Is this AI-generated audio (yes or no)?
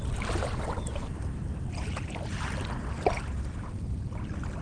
no